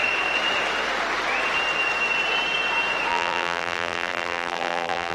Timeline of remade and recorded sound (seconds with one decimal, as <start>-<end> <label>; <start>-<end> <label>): 0.0-3.1 recorded; 3.1-5.1 remade